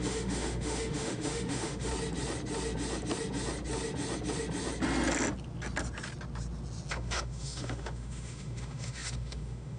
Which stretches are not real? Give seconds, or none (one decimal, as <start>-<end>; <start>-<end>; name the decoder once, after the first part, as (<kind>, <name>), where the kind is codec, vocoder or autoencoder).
0.0-1.9 (autoencoder, DAC-VAE); 6.9-9.8